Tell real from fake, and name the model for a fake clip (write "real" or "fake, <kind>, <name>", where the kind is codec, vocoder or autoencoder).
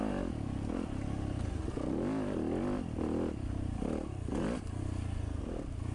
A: real